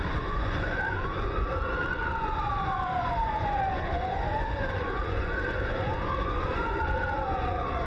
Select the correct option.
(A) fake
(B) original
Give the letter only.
A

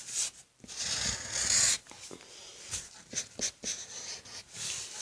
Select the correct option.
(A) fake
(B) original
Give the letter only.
B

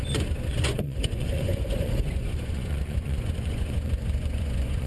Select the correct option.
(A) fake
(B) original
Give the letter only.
A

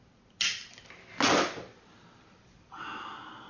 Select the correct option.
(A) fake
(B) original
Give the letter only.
B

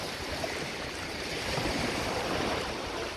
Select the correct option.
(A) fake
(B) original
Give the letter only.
A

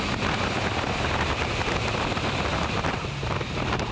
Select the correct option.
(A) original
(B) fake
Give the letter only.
A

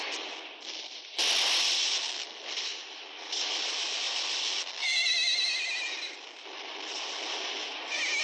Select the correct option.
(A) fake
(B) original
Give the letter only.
B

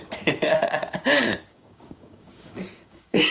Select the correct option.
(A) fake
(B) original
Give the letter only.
A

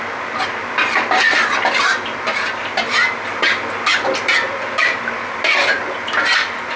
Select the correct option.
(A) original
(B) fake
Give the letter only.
A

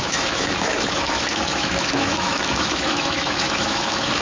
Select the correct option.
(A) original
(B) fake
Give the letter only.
B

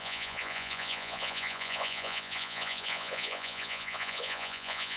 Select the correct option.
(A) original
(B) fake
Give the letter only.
B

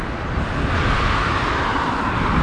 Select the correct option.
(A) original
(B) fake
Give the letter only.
A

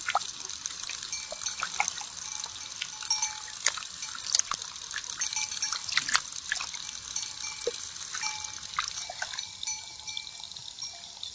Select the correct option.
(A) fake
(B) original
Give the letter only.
B